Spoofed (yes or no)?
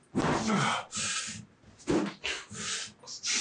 no